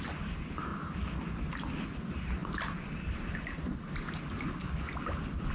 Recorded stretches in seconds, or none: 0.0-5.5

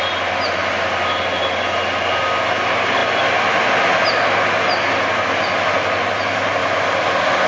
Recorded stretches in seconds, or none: 0.0-7.5

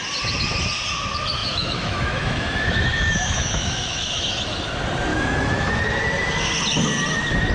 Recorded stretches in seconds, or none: 0.0-1.4; 4.2-5.1; 5.8-7.5

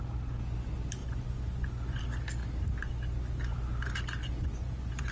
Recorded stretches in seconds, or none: 0.0-1.0; 2.0-4.2

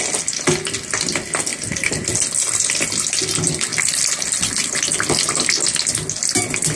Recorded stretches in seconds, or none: 0.0-6.8

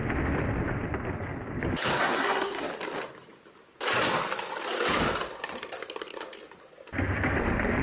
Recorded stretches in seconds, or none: 0.0-2.0; 2.7-7.8